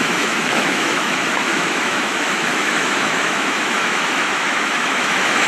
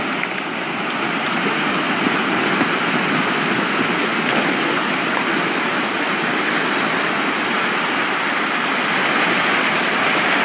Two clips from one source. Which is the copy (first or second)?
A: first